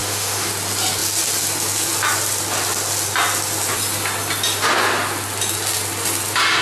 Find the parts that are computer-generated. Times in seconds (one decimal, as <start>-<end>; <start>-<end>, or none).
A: 0.0-0.5

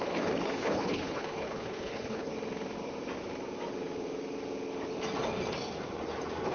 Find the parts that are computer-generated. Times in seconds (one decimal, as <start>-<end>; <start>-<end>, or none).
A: 0.0-2.3

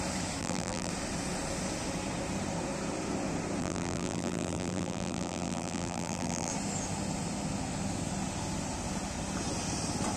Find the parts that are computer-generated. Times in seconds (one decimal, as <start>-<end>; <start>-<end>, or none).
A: 0.4-0.9; 3.6-6.5

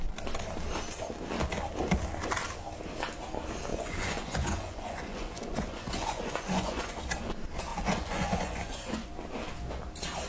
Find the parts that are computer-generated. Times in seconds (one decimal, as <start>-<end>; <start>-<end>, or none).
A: 3.7-7.0; 7.7-9.1

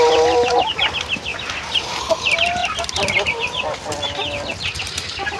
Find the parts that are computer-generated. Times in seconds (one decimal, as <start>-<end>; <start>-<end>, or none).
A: 1.3-2.0

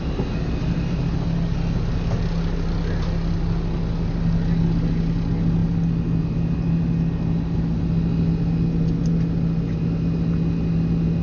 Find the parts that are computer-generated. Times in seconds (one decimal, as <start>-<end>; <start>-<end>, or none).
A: none

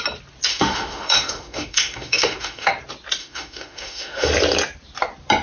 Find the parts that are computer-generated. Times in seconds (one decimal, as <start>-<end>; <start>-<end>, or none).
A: 0.5-2.7; 3.2-4.3

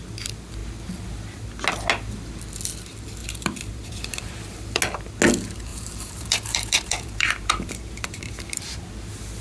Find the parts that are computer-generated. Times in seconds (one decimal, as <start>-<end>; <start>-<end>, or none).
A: 3.2-4.8; 5.7-8.8